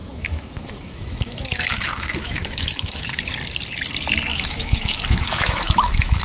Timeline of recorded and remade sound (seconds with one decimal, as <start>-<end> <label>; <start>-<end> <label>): 0.0-3.2 remade; 3.2-4.3 recorded; 4.3-6.2 remade